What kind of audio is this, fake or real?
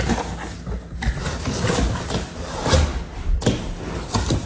real